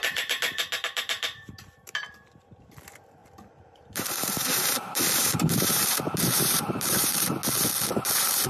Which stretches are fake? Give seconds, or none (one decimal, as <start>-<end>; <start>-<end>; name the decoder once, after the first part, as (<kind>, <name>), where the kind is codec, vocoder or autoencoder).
0.0-7.4 (vocoder, BigVGAN v2); 7.9-8.5